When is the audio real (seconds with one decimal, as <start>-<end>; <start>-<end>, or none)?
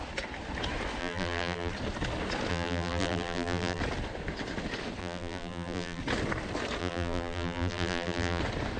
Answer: 0.0-1.0; 1.7-2.5; 3.8-5.0; 6.0-6.8; 8.4-8.8